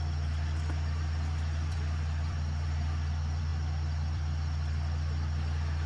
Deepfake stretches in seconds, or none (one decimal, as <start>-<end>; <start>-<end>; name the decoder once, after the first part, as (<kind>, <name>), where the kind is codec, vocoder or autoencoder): none